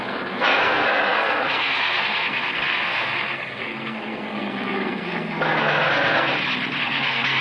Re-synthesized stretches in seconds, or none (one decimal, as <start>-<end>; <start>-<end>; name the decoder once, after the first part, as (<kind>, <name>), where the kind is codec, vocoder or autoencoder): 0.0-6.3 (codec, SNAC); 6.8-7.4